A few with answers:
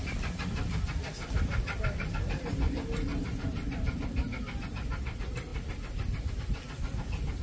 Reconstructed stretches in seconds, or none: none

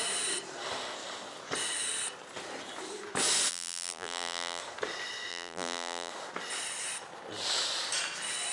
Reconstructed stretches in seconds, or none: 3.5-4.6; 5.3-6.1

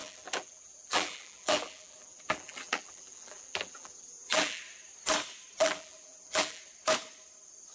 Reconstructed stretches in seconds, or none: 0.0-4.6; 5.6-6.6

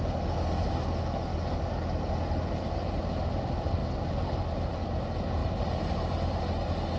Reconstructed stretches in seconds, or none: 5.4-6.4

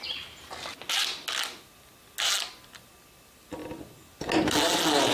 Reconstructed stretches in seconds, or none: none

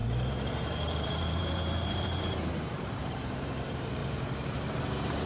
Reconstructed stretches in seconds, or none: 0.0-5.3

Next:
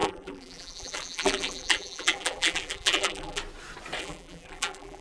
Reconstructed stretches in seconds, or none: 0.0-3.4; 4.0-5.0